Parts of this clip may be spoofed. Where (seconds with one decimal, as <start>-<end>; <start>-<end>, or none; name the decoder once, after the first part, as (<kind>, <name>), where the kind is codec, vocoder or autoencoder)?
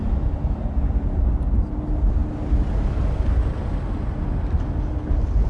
none